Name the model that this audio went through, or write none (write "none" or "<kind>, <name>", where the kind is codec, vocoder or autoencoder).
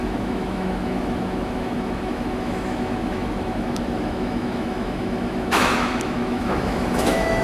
autoencoder, DAC-VAE